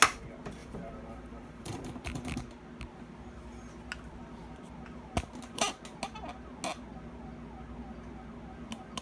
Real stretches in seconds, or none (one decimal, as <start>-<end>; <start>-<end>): 0.0-0.6; 2.3-9.0